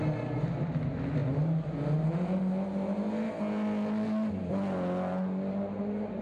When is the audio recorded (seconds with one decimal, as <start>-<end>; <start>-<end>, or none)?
0.0-6.2